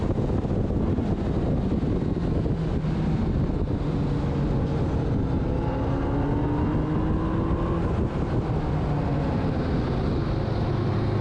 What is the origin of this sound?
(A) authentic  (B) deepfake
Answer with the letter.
A